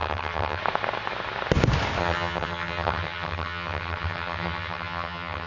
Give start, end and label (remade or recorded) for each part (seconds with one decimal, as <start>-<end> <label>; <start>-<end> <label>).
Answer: 0.0-0.6 remade; 0.6-2.0 recorded; 2.0-5.5 remade